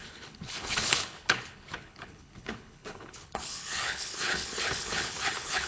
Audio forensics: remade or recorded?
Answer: remade